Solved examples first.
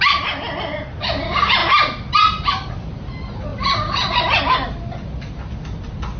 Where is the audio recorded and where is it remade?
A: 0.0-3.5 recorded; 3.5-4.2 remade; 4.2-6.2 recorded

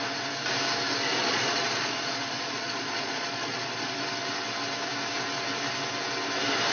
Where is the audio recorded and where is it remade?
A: 0.0-1.2 recorded; 1.2-3.9 remade; 3.9-6.7 recorded

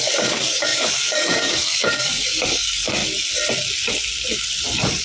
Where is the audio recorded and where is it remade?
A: 0.0-3.0 remade; 3.0-5.0 recorded

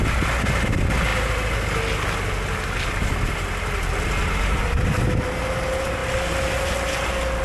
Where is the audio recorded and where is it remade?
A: 0.0-7.4 recorded

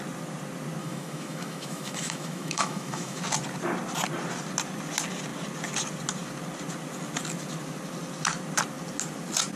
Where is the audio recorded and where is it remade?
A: 0.0-0.8 recorded; 0.8-3.2 remade; 3.2-9.6 recorded

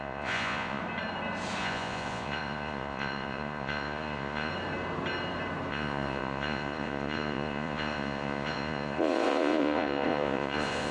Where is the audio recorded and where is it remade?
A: 0.0-0.8 remade; 0.8-1.6 recorded; 1.6-4.5 remade; 4.5-5.7 recorded; 5.7-10.9 remade

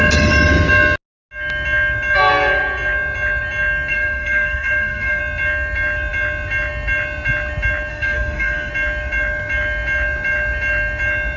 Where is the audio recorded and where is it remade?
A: 0.0-3.9 recorded; 3.9-5.2 remade; 5.2-7.9 recorded; 7.9-8.7 remade; 8.7-11.4 recorded